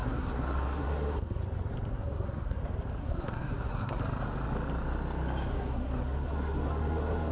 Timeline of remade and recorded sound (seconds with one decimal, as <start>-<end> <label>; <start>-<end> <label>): 0.0-1.4 remade; 1.4-1.9 recorded; 1.9-2.6 remade; 2.6-3.0 recorded; 3.0-4.0 remade; 4.0-5.5 recorded; 5.5-7.3 remade